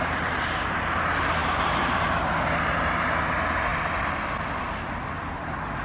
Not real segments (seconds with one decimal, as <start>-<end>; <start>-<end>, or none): 1.4-2.0; 3.7-4.6